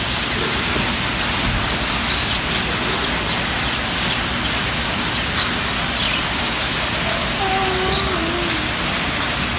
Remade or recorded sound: recorded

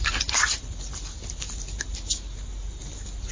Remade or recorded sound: recorded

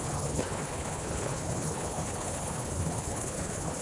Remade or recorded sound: remade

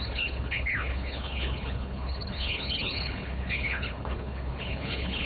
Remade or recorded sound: remade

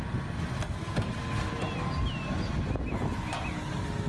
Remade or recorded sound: recorded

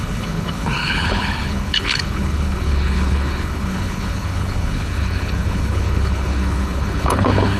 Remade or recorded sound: remade